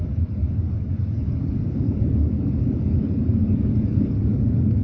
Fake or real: fake